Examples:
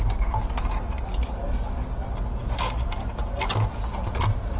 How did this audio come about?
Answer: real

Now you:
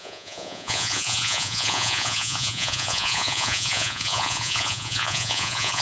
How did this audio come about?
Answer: fake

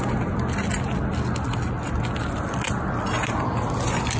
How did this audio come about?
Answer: real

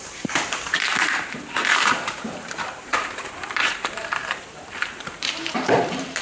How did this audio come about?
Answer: fake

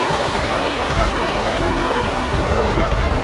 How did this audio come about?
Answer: fake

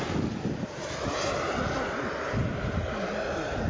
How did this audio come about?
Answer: real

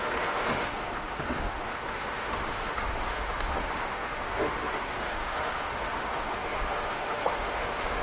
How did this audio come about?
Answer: fake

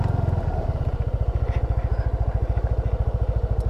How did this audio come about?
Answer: real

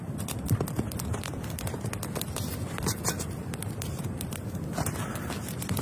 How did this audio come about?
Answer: fake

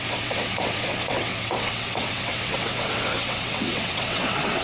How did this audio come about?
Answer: fake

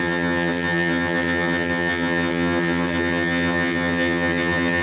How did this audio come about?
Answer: fake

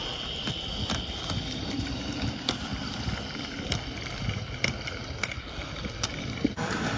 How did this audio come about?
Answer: real